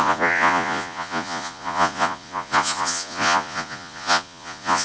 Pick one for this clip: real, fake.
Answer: fake